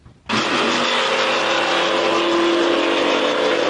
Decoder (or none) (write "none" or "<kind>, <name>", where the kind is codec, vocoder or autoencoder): none